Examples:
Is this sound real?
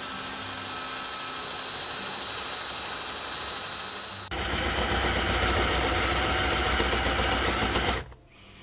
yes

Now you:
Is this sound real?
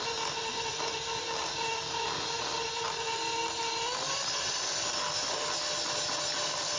yes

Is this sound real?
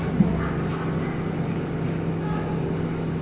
yes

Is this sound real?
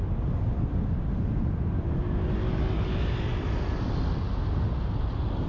yes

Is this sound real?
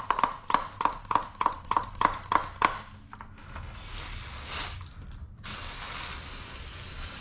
yes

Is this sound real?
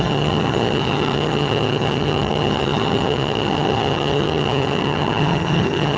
no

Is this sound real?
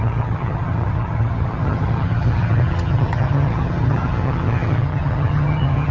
no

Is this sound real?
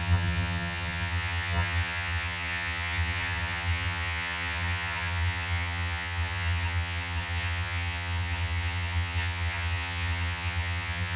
no